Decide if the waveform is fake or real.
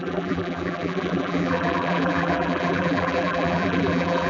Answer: fake